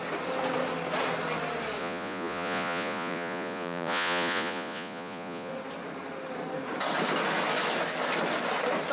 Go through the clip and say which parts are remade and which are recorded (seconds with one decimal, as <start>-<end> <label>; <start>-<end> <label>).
0.0-1.8 recorded; 1.8-5.5 remade; 5.5-8.9 recorded